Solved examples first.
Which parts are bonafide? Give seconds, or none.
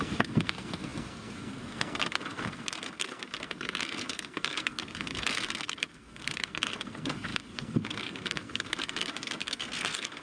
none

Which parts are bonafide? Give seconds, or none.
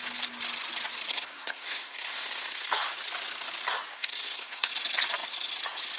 0.0-1.1; 2.7-3.9; 4.7-6.0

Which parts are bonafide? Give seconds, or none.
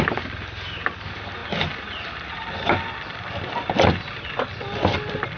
0.0-5.4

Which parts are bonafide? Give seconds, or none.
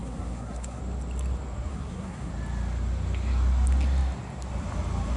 0.8-1.7; 2.3-5.2